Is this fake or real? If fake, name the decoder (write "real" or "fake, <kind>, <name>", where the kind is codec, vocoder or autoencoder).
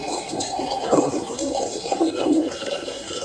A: fake, codec, SNAC